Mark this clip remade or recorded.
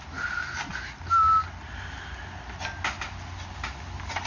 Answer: remade